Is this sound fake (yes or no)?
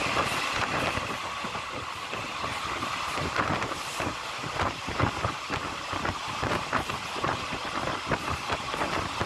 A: no